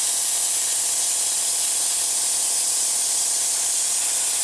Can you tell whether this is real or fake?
real